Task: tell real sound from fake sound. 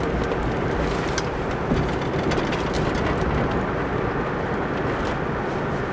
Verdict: real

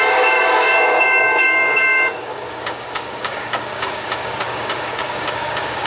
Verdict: fake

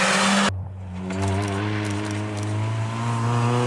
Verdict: real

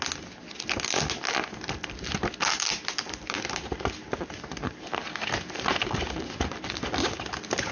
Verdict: real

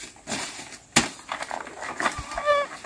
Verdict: real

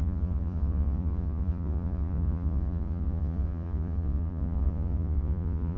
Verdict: fake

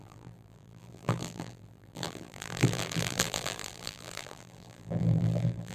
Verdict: fake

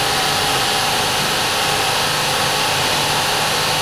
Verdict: real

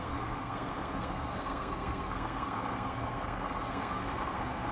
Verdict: fake